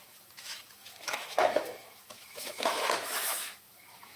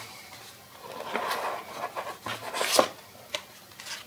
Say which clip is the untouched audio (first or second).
second